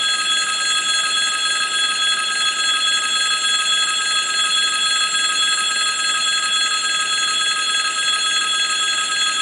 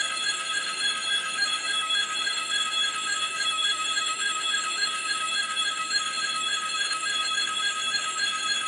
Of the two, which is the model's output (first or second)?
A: second